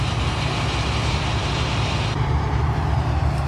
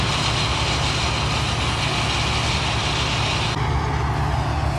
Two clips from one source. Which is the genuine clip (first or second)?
second